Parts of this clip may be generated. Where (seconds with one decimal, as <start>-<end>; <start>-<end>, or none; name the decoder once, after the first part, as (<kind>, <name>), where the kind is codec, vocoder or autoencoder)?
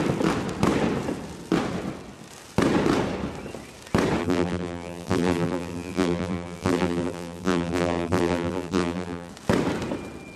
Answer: 4.2-9.3 (vocoder, BigVGAN v2)